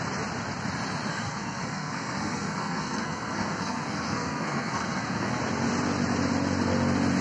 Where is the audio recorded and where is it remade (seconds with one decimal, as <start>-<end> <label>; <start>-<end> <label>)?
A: 0.0-1.1 recorded; 1.1-5.4 remade; 5.4-7.2 recorded